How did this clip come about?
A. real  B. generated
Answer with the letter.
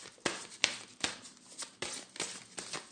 A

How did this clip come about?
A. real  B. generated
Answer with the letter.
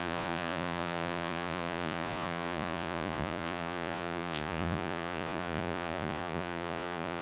B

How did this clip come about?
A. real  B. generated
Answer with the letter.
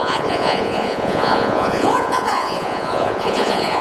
B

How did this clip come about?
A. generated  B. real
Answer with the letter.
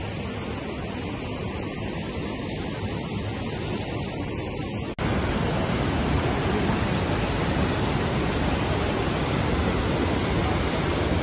B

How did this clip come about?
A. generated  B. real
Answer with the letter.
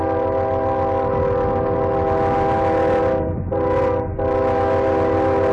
B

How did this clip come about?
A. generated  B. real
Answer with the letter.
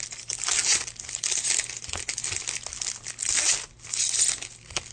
B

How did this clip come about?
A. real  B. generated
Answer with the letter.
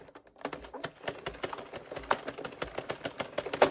A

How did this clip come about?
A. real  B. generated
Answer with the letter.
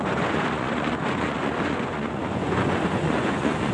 B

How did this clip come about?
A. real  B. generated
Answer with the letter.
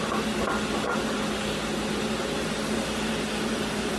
A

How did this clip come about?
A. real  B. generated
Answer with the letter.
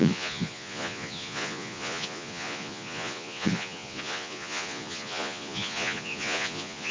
B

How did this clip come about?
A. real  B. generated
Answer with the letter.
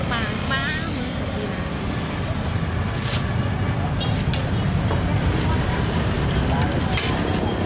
A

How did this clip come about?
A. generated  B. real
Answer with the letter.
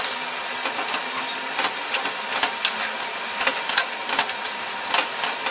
B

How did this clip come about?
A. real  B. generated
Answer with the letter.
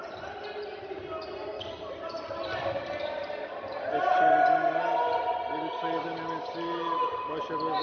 A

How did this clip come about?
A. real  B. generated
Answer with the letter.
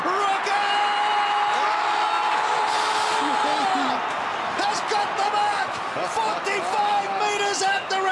A